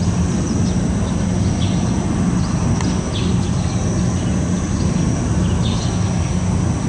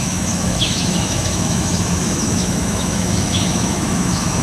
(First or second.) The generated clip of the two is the second